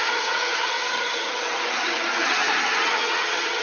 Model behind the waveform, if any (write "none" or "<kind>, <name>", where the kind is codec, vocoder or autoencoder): vocoder, HiFi-GAN